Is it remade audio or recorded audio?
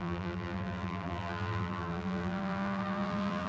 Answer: remade